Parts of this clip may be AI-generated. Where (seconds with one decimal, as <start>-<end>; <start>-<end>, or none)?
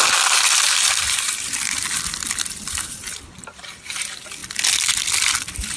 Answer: 0.0-4.4; 5.0-5.8